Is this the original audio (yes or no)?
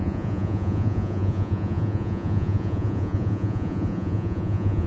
no